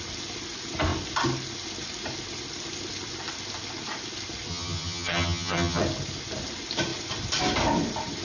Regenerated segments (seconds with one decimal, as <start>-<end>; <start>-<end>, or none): 4.5-5.8